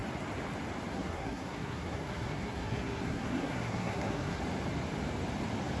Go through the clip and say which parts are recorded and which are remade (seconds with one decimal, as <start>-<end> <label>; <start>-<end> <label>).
0.0-0.9 recorded; 0.9-4.4 remade; 4.4-5.8 recorded